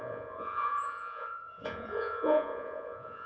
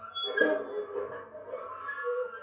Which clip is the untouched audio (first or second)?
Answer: second